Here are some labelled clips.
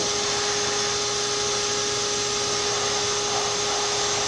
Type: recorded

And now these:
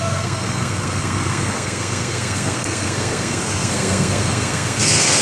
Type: remade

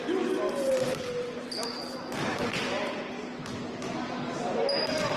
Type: recorded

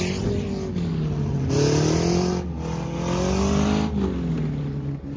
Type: recorded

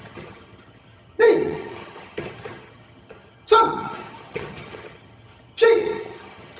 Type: remade